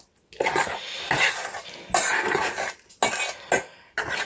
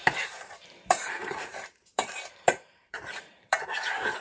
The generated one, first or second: second